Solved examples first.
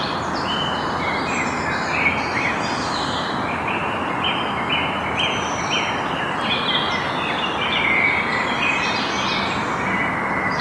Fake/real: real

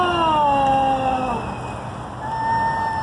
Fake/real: real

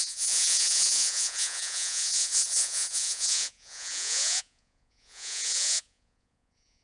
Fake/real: fake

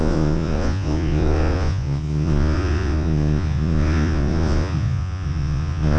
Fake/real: fake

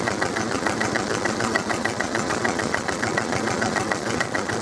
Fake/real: fake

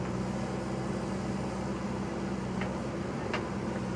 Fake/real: real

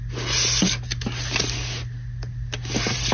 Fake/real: real